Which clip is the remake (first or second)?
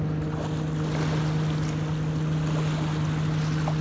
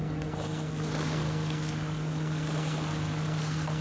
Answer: second